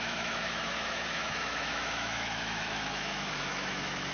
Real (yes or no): no